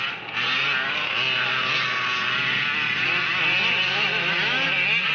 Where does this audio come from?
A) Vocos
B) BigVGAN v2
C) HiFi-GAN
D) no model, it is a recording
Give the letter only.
D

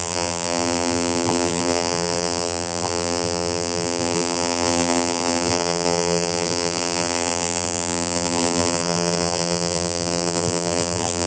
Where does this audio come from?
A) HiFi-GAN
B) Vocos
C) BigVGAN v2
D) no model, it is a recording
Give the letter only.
C